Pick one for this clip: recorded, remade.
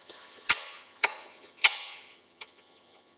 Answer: remade